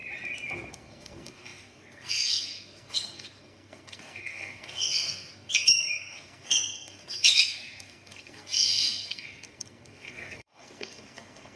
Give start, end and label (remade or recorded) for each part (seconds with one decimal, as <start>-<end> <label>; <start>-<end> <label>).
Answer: 0.0-0.7 recorded; 0.7-11.6 remade